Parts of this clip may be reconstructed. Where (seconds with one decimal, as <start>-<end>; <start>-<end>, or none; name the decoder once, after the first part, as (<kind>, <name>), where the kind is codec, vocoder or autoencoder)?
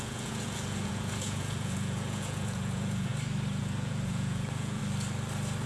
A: 0.0-3.1 (vocoder, Vocos); 3.6-4.8